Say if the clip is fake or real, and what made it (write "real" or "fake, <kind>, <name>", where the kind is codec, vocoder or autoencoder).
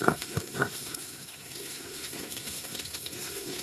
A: fake, codec, SNAC